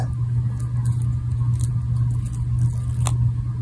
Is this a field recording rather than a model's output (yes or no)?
yes